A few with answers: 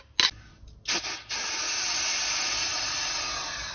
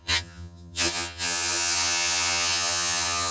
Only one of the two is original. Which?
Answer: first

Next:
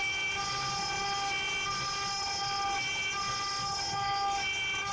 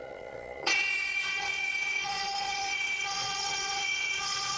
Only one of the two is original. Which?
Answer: first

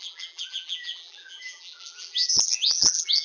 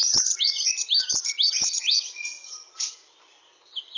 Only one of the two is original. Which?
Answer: second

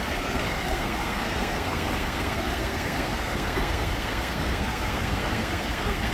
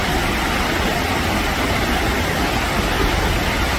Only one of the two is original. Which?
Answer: second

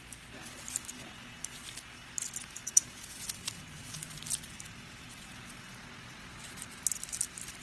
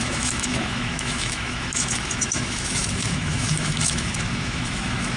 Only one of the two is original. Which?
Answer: first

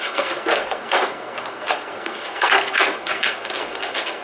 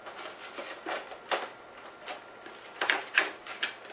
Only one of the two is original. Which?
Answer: second